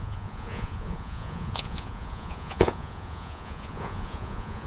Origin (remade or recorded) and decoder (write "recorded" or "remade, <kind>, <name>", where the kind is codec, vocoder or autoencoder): remade, vocoder, Vocos